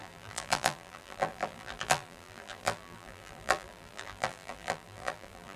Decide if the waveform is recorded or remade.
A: remade